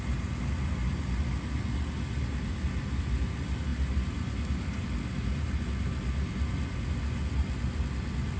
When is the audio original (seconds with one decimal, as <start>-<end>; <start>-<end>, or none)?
0.0-8.4